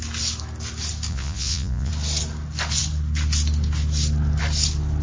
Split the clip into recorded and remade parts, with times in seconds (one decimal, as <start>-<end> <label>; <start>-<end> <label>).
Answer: 0.0-1.1 recorded; 1.1-1.9 remade; 1.9-5.0 recorded